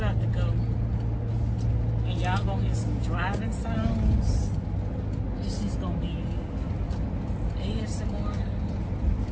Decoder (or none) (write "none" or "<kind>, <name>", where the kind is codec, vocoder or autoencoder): none